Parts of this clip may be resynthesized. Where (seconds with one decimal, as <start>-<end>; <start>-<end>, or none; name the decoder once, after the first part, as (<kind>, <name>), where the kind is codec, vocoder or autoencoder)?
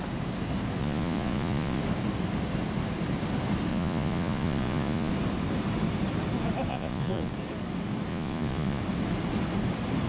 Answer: 0.8-1.8 (vocoder, Vocos); 3.7-5.1; 6.7-7.3; 8.1-8.8